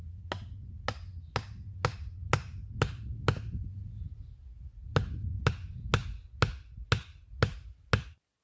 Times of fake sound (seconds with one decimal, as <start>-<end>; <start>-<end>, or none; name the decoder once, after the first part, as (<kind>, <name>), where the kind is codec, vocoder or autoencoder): none